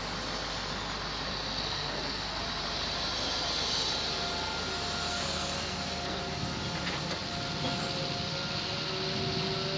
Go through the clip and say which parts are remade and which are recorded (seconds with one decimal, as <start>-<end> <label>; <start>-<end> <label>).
0.0-1.3 recorded; 1.3-2.4 remade; 2.4-5.1 recorded; 5.1-6.2 remade; 6.2-9.8 recorded

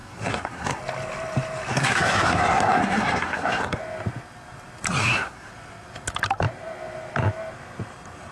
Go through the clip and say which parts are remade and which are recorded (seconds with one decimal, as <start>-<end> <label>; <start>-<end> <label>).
0.0-0.8 remade; 0.8-1.7 recorded; 1.7-3.8 remade; 3.8-5.0 recorded; 5.0-5.5 remade; 5.5-8.3 recorded

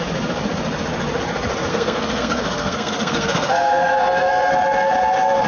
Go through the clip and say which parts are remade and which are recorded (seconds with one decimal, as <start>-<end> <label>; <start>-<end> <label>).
0.0-1.7 recorded; 1.7-4.5 remade; 4.5-5.5 recorded

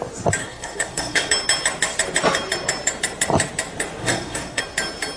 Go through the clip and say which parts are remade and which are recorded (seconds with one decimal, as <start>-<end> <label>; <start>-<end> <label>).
0.0-0.4 recorded; 0.4-1.3 remade; 1.3-4.0 recorded; 4.0-4.6 remade; 4.6-5.2 recorded